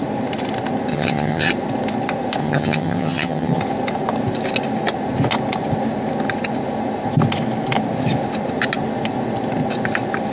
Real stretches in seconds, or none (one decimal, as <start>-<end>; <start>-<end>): 0.0-0.9; 1.5-2.4; 3.6-10.3